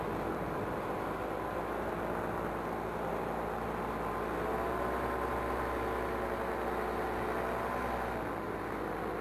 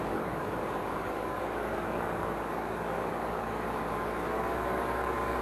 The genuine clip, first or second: first